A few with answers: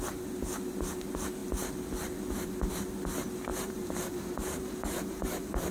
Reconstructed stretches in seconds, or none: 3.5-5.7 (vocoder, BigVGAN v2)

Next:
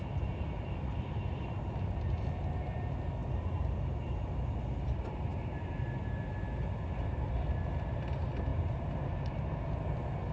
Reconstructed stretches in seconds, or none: none

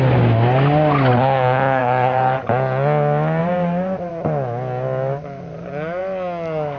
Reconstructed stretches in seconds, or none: 1.8-2.4 (vocoder, BigVGAN v2); 3.4-4.1

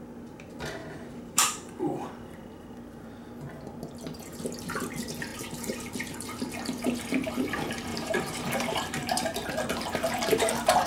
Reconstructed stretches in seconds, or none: 0.8-1.8 (vocoder, BigVGAN v2); 5.3-6.5; 7.9-10.9